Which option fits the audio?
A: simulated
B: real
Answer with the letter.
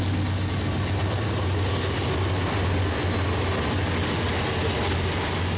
B